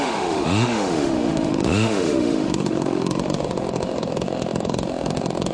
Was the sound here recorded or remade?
remade